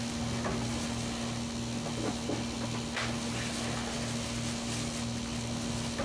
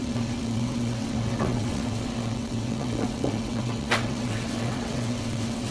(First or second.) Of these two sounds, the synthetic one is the second